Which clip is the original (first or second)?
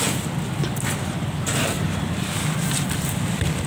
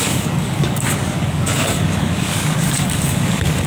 first